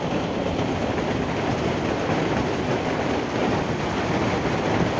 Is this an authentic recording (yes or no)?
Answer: yes